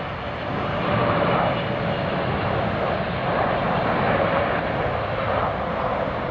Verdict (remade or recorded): recorded